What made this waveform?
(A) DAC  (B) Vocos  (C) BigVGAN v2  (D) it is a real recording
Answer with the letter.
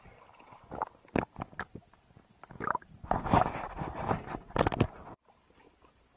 D